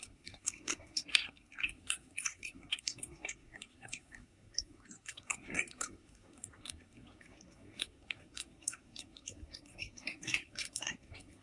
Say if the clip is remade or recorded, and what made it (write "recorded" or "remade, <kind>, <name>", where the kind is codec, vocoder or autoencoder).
remade, codec, SNAC